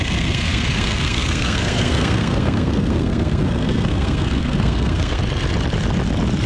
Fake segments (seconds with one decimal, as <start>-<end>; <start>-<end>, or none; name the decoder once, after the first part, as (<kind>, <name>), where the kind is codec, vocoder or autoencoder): 0.0-5.2 (codec, SNAC)